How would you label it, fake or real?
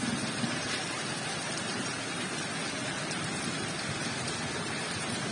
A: fake